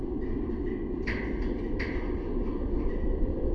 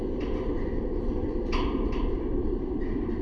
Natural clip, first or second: first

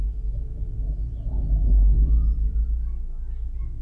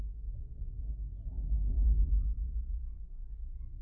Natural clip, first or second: first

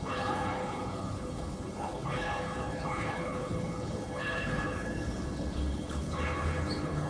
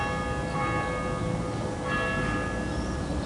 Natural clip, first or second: second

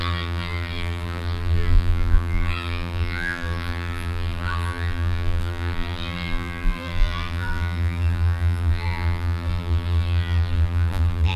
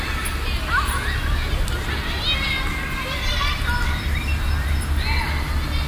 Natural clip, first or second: second